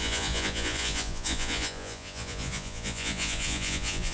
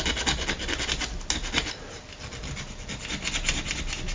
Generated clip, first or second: first